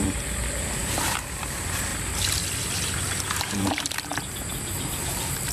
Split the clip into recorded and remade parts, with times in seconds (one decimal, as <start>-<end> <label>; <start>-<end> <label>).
0.0-1.9 remade; 1.9-3.4 recorded; 3.4-4.1 remade; 4.1-4.9 recorded; 4.9-5.5 remade